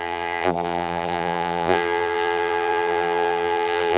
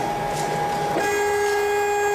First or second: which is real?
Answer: second